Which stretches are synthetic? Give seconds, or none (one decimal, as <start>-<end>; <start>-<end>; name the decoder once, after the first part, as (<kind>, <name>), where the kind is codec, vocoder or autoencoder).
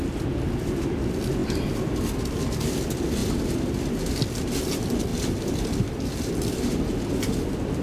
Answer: 5.1-6.3 (vocoder, BigVGAN v2)